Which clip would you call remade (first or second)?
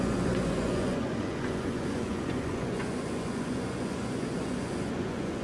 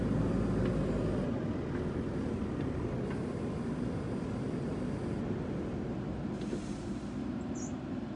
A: first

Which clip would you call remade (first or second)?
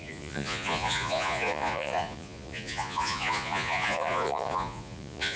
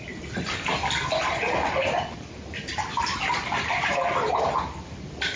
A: first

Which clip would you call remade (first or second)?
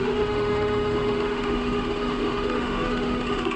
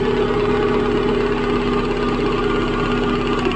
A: first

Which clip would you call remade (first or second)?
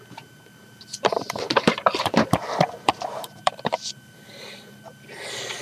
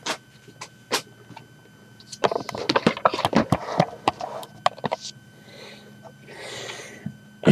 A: first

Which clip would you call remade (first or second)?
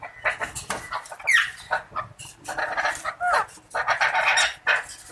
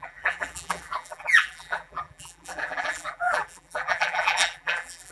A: second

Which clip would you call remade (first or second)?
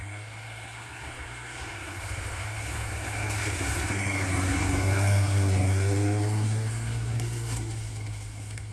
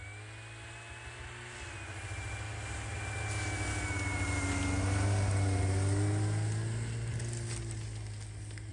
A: first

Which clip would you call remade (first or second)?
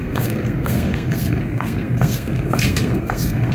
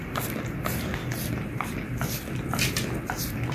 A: first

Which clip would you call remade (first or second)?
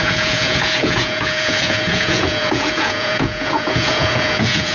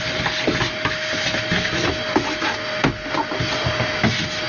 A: first